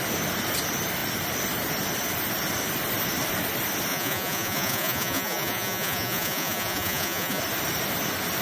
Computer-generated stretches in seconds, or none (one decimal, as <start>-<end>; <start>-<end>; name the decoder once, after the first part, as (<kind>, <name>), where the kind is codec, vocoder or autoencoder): 3.9-7.4 (vocoder, Vocos)